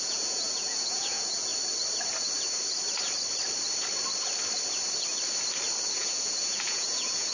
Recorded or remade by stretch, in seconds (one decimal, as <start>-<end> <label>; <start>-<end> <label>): 0.0-1.5 remade; 1.5-5.9 recorded; 5.9-7.3 remade